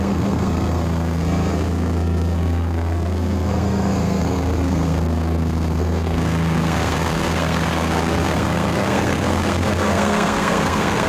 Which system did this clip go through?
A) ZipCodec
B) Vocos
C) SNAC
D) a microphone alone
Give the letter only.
C